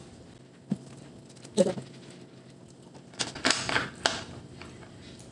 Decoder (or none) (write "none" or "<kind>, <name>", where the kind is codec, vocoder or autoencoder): none